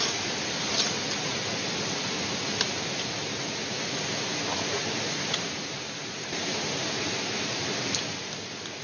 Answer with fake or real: real